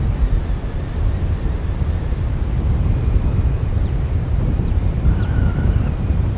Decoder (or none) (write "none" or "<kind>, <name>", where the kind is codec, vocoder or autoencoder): vocoder, BigVGAN v2